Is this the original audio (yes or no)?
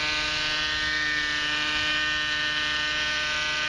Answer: yes